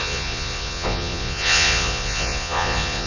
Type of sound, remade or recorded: remade